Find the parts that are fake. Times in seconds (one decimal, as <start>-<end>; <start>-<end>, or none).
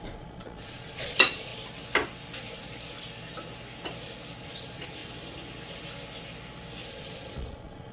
0.0-1.5; 4.4-5.0; 6.9-7.9